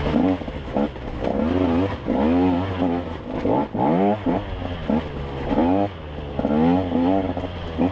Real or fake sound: real